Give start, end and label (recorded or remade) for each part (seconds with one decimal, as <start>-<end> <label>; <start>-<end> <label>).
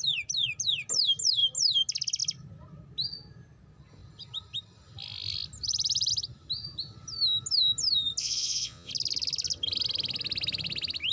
0.0-8.2 recorded; 8.2-8.9 remade; 8.9-11.1 recorded